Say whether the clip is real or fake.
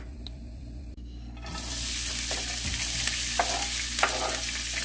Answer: real